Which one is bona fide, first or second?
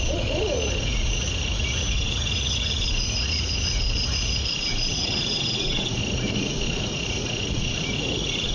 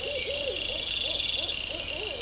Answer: second